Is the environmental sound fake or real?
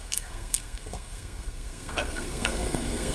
fake